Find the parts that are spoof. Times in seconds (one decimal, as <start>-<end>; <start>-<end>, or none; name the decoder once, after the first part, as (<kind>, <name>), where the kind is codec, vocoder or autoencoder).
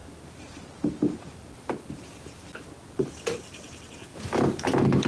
none